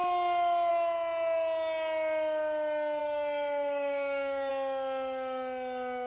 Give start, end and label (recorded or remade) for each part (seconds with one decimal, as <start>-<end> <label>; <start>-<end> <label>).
0.0-3.0 recorded; 3.0-4.5 remade; 4.5-6.1 recorded

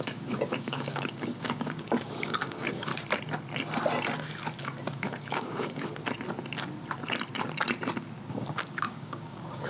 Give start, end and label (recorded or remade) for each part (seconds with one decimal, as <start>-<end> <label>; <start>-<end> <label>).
0.0-2.9 remade; 2.9-4.6 recorded; 4.6-5.9 remade; 5.9-8.3 recorded; 8.3-9.7 remade

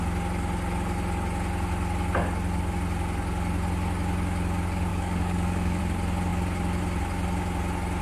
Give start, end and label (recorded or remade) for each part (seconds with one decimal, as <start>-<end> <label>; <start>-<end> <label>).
0.0-4.9 recorded; 4.9-5.8 remade; 5.8-8.0 recorded

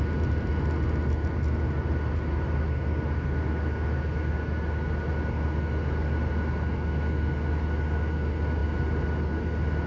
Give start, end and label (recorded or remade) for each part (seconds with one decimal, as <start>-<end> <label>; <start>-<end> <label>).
0.0-9.9 recorded

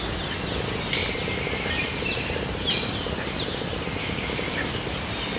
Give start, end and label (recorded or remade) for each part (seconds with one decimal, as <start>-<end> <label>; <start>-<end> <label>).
0.0-4.0 recorded; 4.0-4.7 remade; 4.7-5.4 recorded

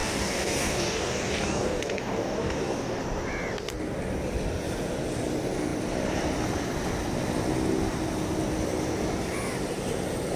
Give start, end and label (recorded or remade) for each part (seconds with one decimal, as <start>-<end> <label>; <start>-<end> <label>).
0.0-3.0 remade; 3.0-10.4 recorded

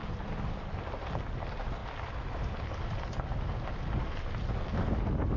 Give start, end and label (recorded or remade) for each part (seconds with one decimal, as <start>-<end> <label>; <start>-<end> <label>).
0.0-5.4 recorded